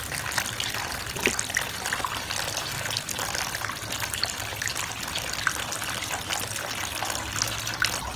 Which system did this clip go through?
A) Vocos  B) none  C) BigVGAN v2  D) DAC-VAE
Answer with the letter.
B